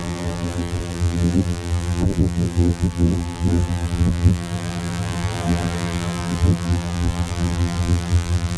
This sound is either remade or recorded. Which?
remade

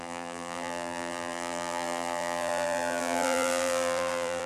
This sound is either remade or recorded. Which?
remade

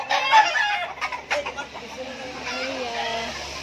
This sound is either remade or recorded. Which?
recorded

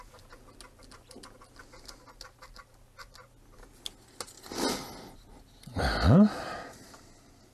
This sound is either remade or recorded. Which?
recorded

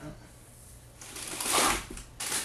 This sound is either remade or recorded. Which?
recorded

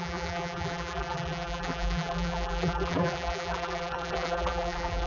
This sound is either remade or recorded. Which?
remade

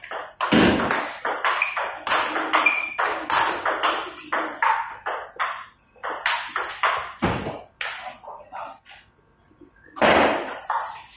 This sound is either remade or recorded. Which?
recorded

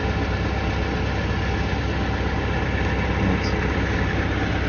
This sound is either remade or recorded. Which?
recorded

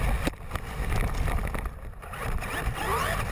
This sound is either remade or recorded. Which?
recorded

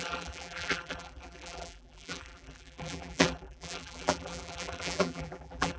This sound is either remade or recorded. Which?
remade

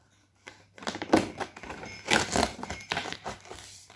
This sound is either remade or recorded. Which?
remade